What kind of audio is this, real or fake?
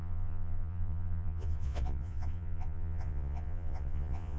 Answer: fake